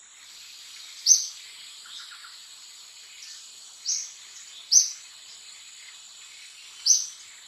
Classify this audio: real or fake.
real